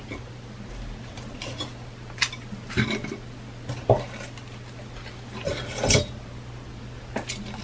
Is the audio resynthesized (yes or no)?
no